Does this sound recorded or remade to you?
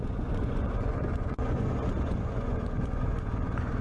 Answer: remade